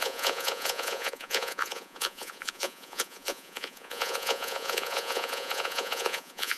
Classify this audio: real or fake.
fake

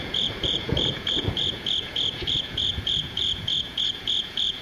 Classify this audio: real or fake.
fake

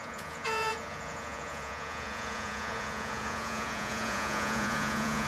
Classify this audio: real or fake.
fake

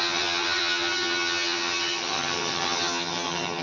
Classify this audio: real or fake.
fake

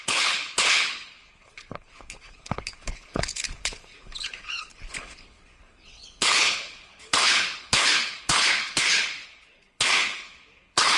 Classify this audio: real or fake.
fake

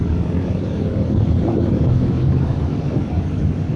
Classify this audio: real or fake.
fake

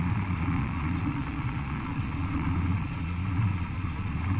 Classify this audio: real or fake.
fake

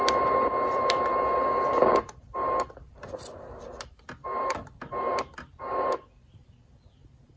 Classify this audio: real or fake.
fake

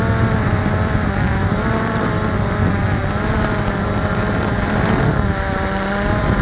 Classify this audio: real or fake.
real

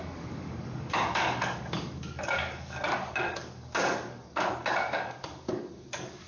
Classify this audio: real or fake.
fake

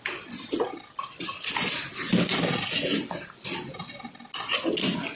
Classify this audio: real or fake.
real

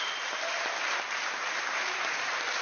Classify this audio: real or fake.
real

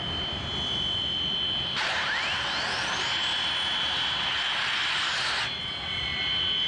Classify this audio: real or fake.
real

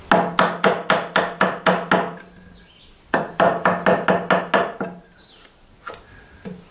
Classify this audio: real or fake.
real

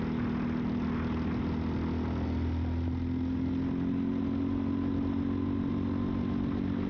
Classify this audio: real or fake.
real